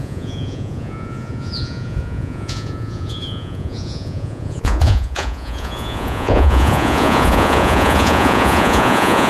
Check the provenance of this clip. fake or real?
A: fake